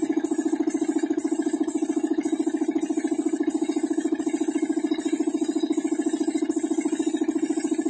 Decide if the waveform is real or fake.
real